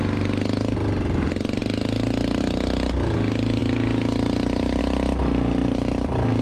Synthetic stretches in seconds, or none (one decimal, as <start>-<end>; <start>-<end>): 5.6-6.4